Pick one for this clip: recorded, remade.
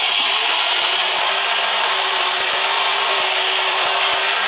remade